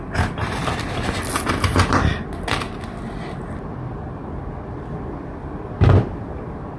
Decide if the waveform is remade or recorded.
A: recorded